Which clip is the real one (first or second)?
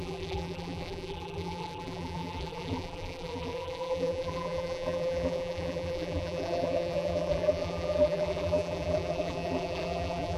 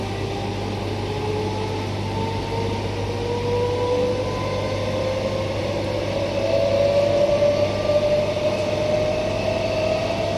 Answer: second